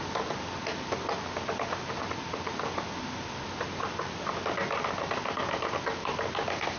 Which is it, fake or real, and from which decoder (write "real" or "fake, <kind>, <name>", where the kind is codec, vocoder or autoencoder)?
real